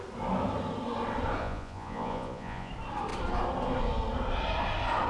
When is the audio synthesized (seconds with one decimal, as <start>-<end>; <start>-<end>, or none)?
1.4-2.7